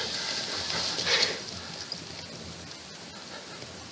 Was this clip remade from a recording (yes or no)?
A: no